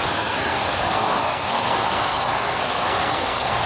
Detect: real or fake fake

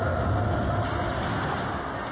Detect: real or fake real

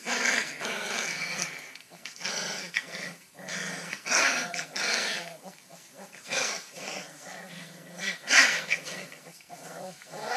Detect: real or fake fake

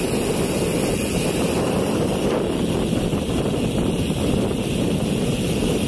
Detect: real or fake real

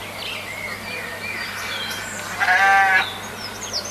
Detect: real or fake real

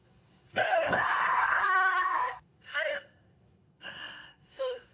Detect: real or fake fake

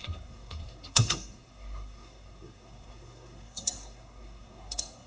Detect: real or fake fake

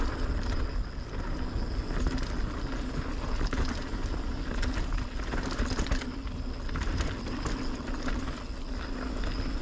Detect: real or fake real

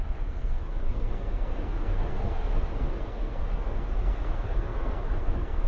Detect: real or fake fake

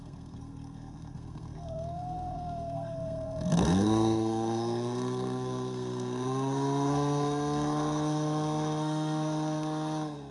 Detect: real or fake fake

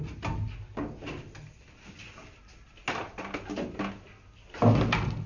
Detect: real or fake real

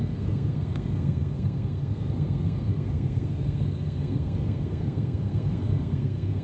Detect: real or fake fake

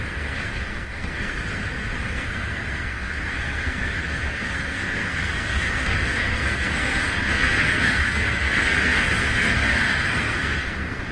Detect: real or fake fake